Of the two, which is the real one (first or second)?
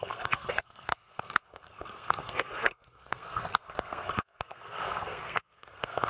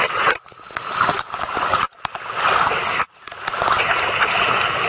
second